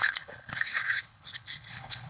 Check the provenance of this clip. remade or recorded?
remade